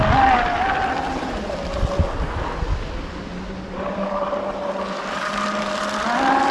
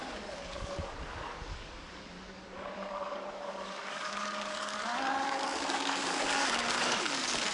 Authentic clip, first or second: first